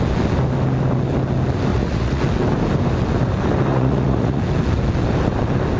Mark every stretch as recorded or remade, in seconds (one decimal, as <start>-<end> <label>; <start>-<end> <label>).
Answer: 0.0-1.7 recorded; 1.7-2.2 remade; 2.2-3.7 recorded; 3.7-4.4 remade; 4.4-5.8 recorded